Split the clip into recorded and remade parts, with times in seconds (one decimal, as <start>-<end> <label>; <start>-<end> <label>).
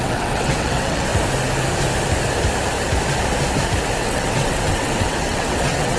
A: 0.0-1.1 remade; 1.1-4.0 recorded; 4.0-6.0 remade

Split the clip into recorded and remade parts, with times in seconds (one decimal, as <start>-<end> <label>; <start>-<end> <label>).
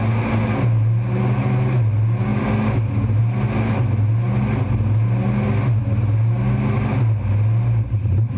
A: 0.0-8.4 recorded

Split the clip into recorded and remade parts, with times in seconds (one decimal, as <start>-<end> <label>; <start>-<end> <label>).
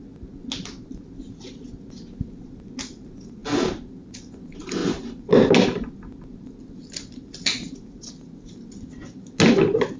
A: 0.0-10.0 recorded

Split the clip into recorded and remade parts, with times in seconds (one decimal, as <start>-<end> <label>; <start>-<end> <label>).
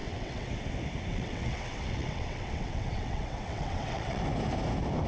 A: 0.0-0.5 remade; 0.5-1.1 recorded; 1.1-4.2 remade; 4.2-5.1 recorded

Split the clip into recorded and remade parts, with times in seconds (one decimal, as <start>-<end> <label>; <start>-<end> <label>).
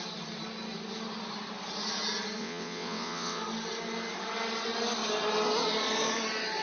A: 0.0-2.4 recorded; 2.4-3.4 remade; 3.4-6.6 recorded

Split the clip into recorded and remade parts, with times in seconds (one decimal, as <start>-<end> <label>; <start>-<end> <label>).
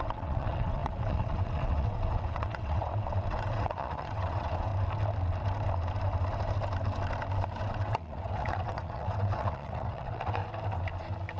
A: 0.0-4.7 remade; 4.7-7.6 recorded; 7.6-10.4 remade; 10.4-11.4 recorded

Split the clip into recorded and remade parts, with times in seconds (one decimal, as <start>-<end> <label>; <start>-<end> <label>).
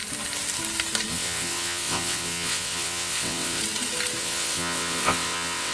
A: 0.0-1.1 recorded; 1.1-3.6 remade; 3.6-4.2 recorded; 4.2-5.7 remade